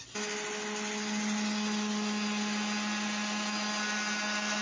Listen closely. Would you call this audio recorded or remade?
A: recorded